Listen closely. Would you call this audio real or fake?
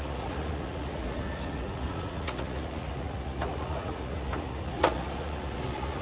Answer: fake